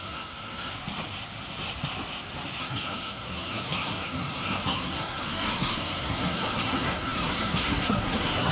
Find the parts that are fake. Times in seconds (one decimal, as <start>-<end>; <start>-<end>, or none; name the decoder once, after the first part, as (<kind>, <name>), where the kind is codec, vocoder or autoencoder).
0.0-0.7 (codec, SNAC); 2.6-8.5